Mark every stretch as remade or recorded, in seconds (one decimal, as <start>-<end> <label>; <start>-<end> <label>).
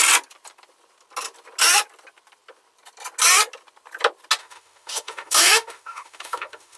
0.0-4.4 recorded; 4.4-6.8 remade